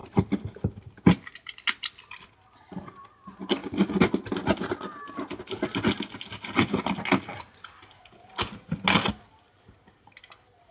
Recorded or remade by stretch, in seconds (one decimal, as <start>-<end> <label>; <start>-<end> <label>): 0.0-10.7 recorded